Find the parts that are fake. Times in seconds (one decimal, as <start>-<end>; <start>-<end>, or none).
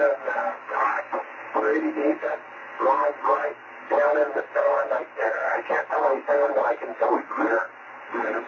none